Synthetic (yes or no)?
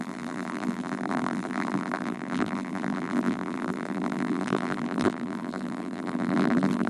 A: yes